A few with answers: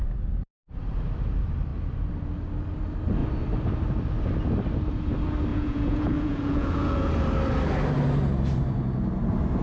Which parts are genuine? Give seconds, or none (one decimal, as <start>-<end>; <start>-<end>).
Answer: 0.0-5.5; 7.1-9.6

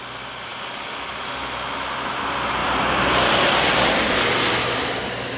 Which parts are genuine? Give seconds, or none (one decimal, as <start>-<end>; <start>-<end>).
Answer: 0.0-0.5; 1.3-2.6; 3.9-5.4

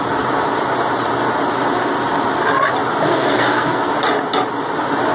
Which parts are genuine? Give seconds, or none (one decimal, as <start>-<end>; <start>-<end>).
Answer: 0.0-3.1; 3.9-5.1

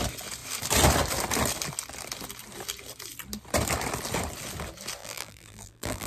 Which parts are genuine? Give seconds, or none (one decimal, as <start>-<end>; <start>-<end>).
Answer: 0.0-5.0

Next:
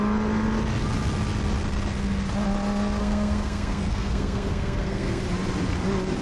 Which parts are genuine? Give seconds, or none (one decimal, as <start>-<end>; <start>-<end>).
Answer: 0.0-3.0; 5.2-6.2

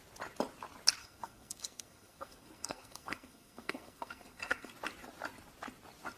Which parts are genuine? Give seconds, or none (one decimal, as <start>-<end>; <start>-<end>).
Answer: 0.0-1.0; 4.7-6.2

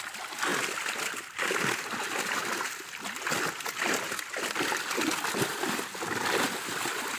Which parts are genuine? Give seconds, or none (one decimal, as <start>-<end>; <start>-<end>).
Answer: 0.0-7.2